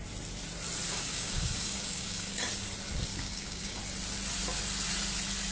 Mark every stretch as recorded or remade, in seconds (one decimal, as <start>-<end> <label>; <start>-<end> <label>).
0.0-0.9 recorded; 0.9-2.4 remade; 2.4-3.1 recorded; 3.1-3.8 remade; 3.8-5.5 recorded